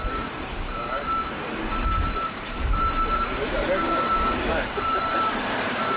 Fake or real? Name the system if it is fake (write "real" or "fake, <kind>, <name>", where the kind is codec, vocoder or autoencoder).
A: fake, vocoder, BigVGAN v2